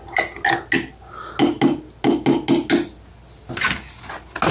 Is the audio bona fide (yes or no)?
yes